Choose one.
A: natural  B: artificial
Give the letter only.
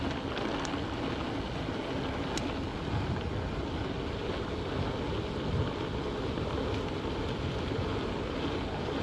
A